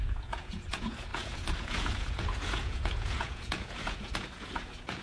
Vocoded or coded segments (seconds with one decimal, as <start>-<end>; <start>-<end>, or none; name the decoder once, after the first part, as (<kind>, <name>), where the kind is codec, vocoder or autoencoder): 0.0-5.0 (vocoder, Vocos)